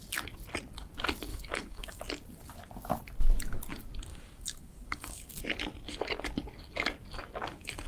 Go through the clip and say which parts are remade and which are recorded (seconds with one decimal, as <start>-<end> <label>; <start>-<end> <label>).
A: 0.0-1.3 recorded; 1.3-2.0 remade; 2.0-4.1 recorded; 4.1-5.3 remade; 5.3-7.9 recorded